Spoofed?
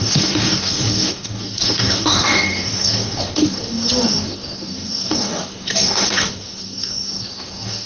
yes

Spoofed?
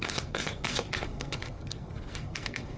yes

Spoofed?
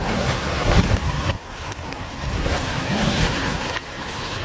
yes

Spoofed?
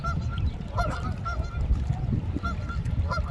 no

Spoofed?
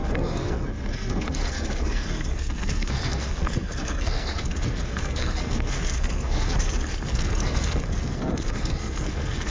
yes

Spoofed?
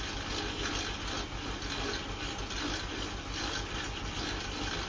no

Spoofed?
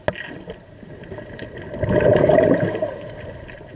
no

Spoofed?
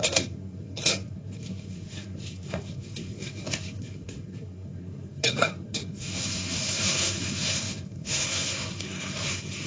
yes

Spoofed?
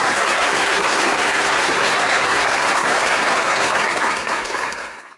yes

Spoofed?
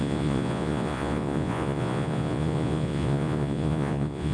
yes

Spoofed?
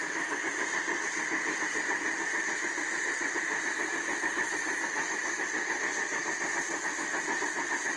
no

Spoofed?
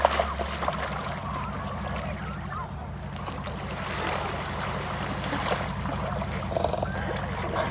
no